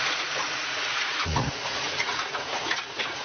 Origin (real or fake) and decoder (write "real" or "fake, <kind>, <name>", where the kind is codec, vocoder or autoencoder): fake, vocoder, Vocos